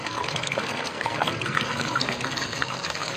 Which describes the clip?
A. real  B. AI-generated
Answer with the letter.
B